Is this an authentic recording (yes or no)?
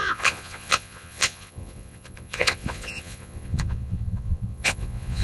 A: no